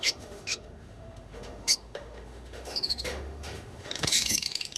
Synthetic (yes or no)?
yes